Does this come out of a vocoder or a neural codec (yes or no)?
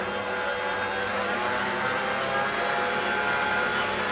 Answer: no